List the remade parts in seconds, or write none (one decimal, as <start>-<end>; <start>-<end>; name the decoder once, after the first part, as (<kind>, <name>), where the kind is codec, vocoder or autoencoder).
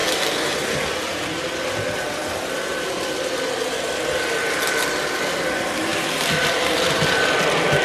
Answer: 0.0-0.6 (vocoder, BigVGAN v2); 5.9-7.8